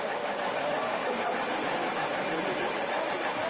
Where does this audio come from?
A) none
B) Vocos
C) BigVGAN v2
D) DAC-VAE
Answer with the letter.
C